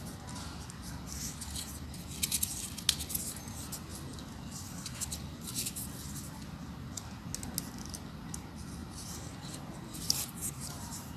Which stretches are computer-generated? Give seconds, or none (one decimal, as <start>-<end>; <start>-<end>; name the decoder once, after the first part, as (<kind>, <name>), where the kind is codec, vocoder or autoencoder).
8.8-11.2 (vocoder, BigVGAN v2)